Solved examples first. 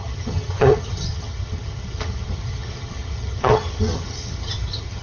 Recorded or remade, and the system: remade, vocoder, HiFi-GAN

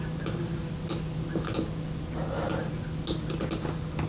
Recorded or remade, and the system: recorded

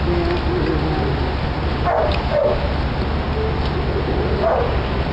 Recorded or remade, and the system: recorded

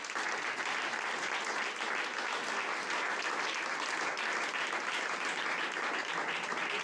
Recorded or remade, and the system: recorded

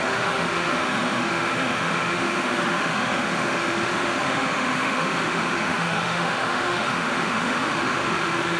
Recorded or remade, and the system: remade, autoencoder, DAC-VAE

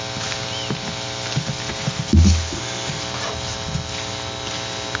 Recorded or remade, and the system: recorded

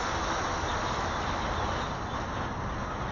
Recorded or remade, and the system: recorded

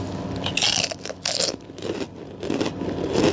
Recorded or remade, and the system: recorded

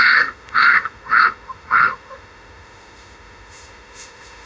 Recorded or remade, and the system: remade, autoencoder, DAC-VAE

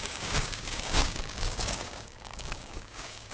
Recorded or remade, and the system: remade, codec, DAC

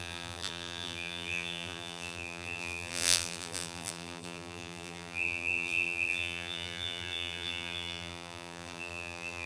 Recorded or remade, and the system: remade, vocoder, BigVGAN v2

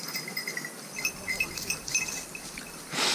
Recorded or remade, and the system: recorded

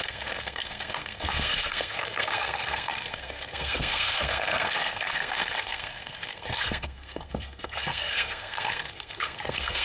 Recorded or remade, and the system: remade, codec, SNAC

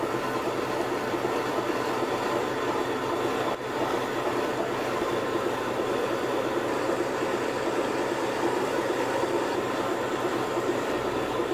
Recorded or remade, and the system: recorded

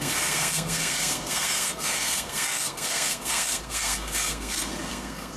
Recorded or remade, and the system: remade, codec, SNAC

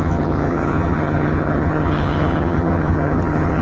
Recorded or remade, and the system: remade, vocoder, HiFi-GAN